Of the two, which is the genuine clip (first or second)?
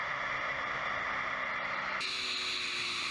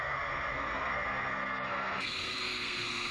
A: first